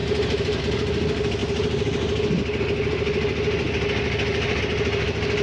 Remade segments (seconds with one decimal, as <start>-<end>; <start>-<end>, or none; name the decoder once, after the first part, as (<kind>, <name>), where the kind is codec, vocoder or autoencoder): 0.0-0.6 (vocoder, BigVGAN v2)